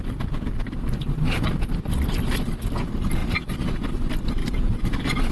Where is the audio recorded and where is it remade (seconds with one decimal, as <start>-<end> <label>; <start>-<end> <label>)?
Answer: 0.0-5.3 remade

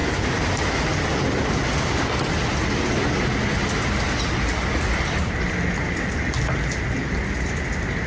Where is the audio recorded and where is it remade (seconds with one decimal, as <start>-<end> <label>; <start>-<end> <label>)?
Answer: 0.0-8.1 recorded